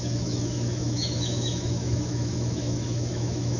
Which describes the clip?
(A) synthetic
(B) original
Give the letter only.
A